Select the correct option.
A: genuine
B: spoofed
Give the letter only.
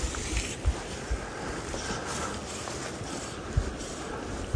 A